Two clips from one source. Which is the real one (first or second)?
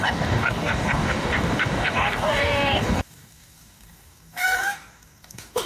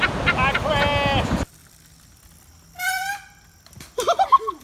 second